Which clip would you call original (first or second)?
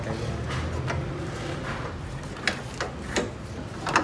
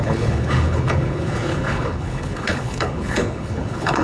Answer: first